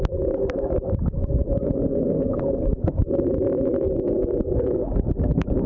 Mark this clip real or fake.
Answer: fake